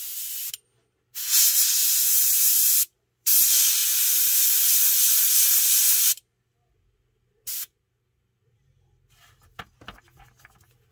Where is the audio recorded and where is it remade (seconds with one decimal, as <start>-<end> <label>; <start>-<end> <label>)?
0.0-1.8 recorded; 1.8-3.4 remade; 3.4-10.9 recorded